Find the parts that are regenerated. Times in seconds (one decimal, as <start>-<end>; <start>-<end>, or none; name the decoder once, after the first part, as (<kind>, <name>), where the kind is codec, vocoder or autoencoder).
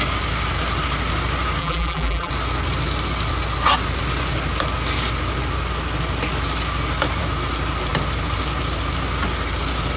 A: 1.6-2.3 (vocoder, BigVGAN v2)